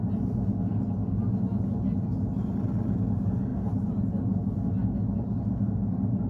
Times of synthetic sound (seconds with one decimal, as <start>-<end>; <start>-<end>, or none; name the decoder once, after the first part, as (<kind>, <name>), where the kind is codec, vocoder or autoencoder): 3.5-4.4 (vocoder, BigVGAN v2)